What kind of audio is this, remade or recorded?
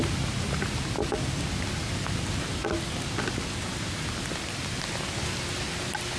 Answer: recorded